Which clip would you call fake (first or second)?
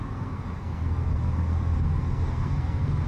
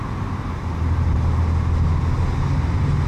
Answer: first